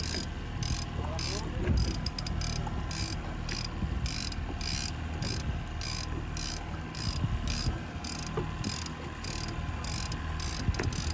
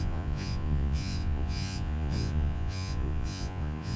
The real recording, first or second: first